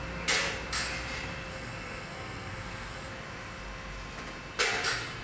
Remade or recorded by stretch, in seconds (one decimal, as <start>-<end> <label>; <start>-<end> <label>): 0.0-1.5 recorded; 1.5-3.1 remade; 3.1-5.2 recorded